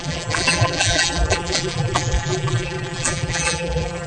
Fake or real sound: fake